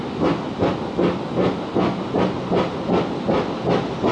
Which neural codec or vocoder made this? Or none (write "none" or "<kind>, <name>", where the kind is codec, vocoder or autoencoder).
none